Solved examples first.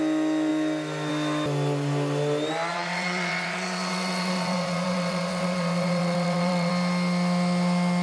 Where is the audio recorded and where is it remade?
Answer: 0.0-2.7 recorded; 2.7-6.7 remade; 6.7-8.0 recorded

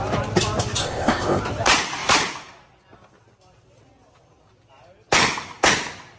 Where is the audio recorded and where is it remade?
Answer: 0.0-0.8 recorded; 0.8-1.4 remade; 1.4-6.2 recorded